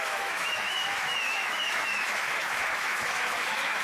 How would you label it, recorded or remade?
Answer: remade